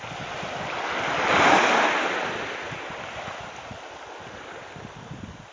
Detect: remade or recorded recorded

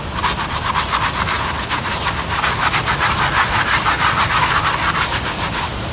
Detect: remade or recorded recorded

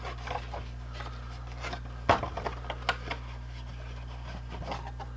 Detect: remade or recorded recorded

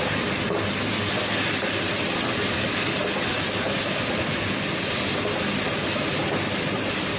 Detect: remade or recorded recorded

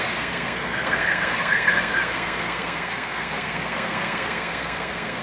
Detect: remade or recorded remade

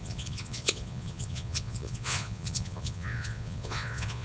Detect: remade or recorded remade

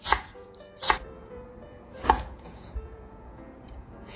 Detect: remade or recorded remade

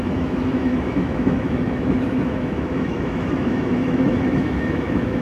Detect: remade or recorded remade